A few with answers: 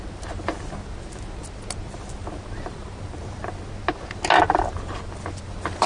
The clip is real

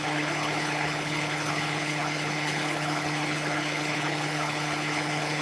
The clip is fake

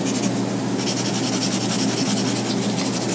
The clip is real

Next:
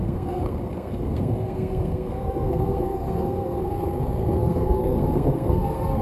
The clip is fake